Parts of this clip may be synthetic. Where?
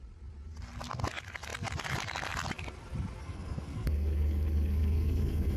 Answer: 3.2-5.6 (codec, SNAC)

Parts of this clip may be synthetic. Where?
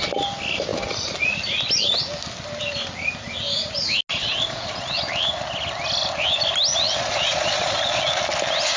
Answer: 4.1-5.0 (vocoder, Vocos); 6.7-8.0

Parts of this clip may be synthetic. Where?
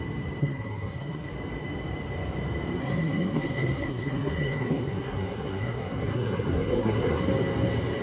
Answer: 0.4-1.3 (codec, SNAC); 2.8-7.2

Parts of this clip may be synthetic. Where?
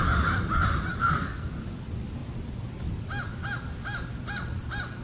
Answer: 0.9-1.5 (codec, SNAC)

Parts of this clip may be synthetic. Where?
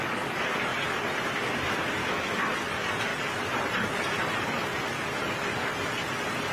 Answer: 2.0-2.5 (autoencoder, DAC-VAE)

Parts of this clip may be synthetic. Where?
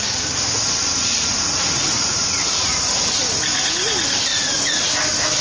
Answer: 1.3-3.1 (vocoder, Vocos); 4.3-4.9